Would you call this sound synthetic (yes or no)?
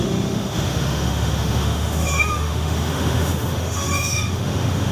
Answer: yes